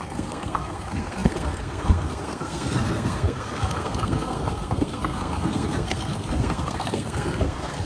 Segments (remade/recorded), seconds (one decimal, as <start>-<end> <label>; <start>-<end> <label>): 0.0-7.9 remade

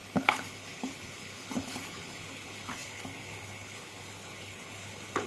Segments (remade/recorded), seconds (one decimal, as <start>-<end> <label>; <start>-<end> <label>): 0.0-5.3 remade

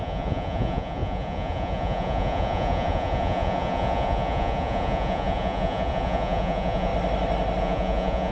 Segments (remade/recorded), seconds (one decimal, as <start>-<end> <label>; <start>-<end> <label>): 0.0-6.9 remade; 6.9-7.6 recorded; 7.6-8.3 remade

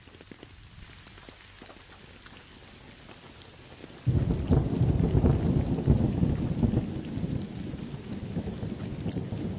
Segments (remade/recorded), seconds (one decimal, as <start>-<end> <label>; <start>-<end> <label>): 0.0-9.6 recorded

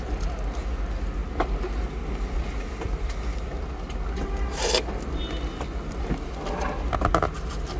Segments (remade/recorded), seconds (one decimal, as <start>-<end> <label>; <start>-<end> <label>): 0.0-7.8 recorded

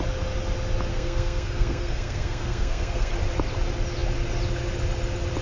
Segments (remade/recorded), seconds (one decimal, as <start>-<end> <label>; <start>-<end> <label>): 0.0-0.9 recorded; 0.9-3.1 remade; 3.1-5.4 recorded